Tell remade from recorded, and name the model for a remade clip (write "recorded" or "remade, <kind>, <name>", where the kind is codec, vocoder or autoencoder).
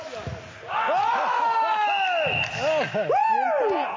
recorded